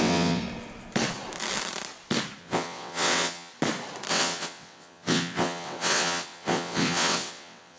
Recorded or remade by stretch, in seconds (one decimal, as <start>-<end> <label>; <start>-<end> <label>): 0.0-0.4 remade; 0.4-2.4 recorded; 2.4-3.5 remade; 3.5-4.1 recorded; 4.1-7.8 remade